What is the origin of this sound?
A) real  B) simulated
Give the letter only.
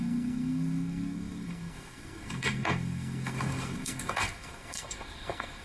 B